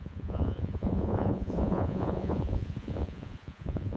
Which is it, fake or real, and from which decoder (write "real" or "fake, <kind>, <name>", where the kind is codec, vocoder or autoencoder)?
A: fake, vocoder, Vocos